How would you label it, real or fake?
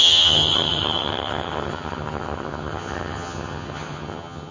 fake